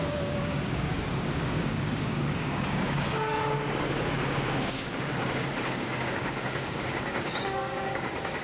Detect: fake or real fake